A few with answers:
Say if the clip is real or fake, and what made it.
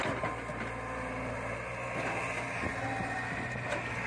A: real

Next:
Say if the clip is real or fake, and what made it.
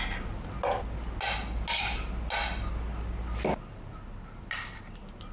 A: real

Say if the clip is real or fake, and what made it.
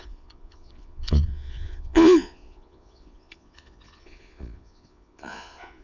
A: fake, vocoder, Vocos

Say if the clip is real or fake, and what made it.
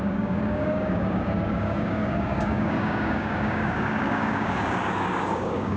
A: fake, codec, DAC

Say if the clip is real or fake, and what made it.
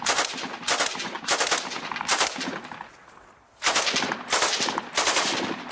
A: real